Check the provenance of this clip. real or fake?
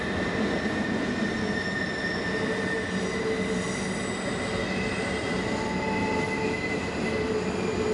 real